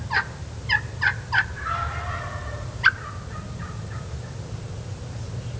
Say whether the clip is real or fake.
real